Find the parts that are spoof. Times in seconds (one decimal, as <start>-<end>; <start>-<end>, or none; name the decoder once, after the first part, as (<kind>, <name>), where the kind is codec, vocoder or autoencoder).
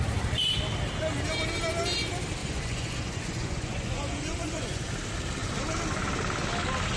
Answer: 2.4-4.9 (vocoder, Vocos)